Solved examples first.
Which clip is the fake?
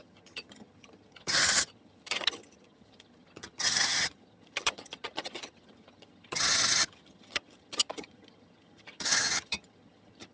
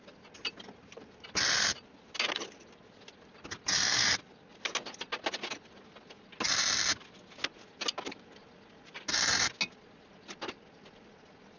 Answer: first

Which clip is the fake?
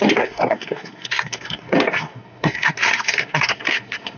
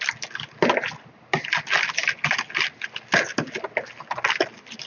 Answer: first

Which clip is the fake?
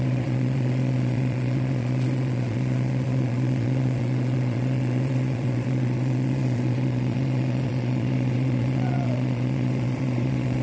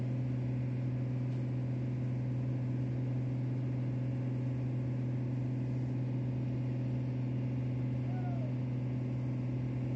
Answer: first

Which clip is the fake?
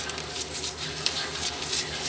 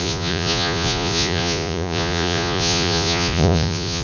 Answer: second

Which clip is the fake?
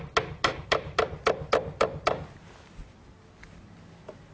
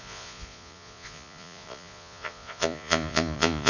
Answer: second